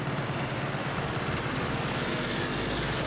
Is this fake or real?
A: real